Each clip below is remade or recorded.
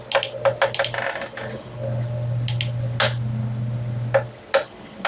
recorded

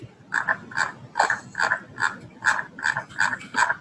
recorded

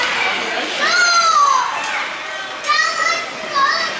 recorded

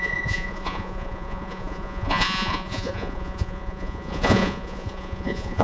remade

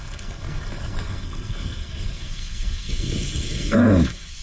remade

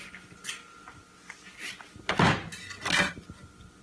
recorded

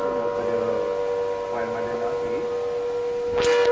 recorded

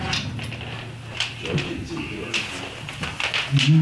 recorded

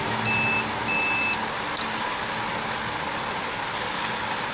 recorded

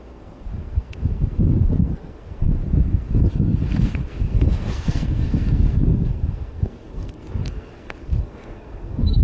remade